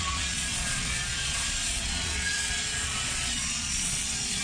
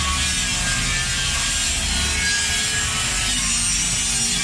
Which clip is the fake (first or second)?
first